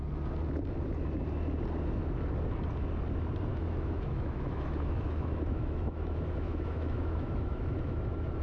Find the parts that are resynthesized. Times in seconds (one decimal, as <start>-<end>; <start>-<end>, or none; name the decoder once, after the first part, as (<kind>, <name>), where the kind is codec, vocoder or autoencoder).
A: 3.5-8.0 (autoencoder, DAC-VAE)